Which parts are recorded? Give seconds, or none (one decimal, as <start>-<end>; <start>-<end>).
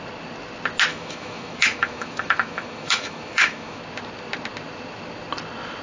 0.0-0.9; 3.8-5.8